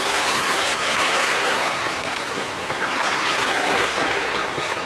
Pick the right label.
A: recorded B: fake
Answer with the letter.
B